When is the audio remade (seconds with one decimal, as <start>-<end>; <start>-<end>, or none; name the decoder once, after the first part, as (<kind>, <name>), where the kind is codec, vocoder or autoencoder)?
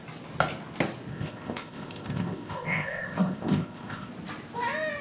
1.1-4.1 (codec, ZipCodec)